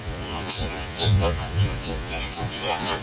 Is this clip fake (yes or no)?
yes